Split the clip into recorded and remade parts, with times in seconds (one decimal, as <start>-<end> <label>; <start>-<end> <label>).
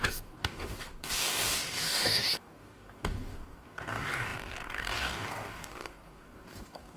0.0-7.0 remade